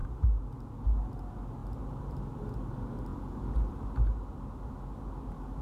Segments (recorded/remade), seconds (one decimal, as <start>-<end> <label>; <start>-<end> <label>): 0.0-0.5 remade; 0.5-1.6 recorded; 1.6-2.2 remade; 2.2-5.6 recorded